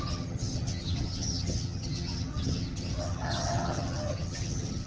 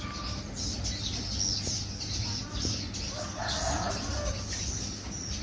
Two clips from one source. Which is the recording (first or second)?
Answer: second